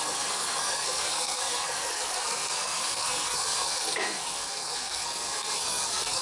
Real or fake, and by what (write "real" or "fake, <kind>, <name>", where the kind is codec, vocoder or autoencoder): fake, codec, SNAC